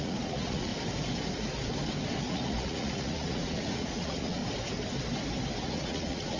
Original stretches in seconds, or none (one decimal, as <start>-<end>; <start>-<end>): 0.7-2.3; 4.4-5.6